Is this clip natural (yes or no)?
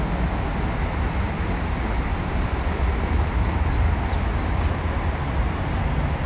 no